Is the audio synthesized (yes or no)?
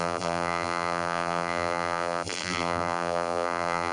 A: yes